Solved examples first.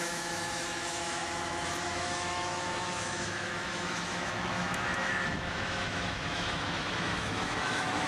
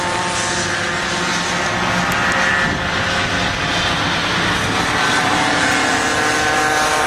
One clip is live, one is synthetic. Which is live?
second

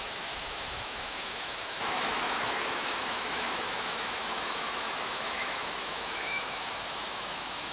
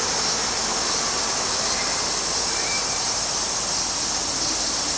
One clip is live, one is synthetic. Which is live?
second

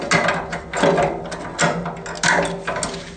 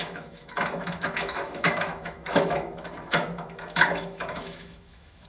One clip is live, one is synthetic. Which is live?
first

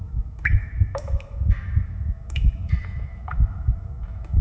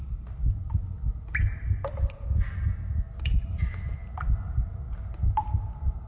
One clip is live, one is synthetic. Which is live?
second